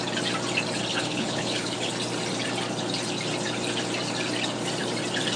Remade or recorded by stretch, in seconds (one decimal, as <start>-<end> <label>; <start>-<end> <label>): 0.0-0.9 recorded; 0.9-1.9 remade; 1.9-5.4 recorded